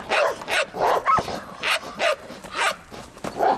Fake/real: real